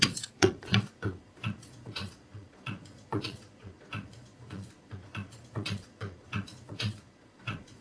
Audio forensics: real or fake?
fake